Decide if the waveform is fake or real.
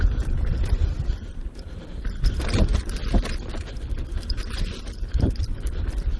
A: fake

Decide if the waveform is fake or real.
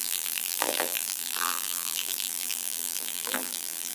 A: fake